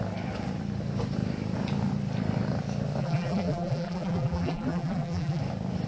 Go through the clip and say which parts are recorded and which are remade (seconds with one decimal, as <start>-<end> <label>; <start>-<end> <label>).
0.0-3.0 recorded; 3.0-5.4 remade; 5.4-5.9 recorded